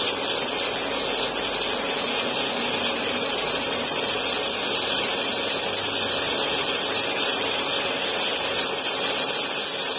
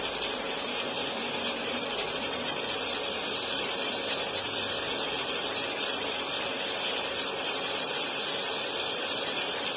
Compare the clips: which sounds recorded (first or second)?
first